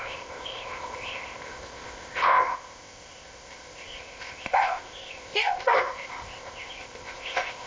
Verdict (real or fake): fake